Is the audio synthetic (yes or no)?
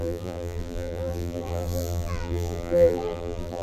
yes